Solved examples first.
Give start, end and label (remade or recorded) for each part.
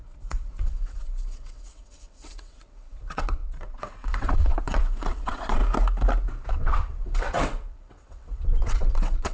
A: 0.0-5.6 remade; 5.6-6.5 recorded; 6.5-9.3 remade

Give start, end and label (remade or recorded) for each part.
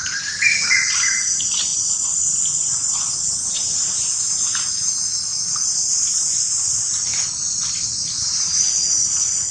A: 0.0-9.5 recorded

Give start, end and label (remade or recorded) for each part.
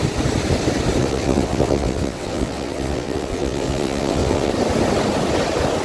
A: 0.0-1.0 recorded; 1.0-4.5 remade; 4.5-5.8 recorded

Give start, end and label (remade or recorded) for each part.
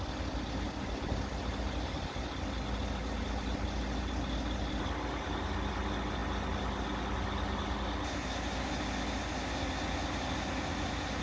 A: 0.0-11.2 recorded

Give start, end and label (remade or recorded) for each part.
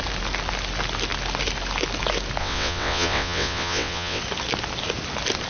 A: 0.0-2.4 recorded; 2.4-4.2 remade; 4.2-5.5 recorded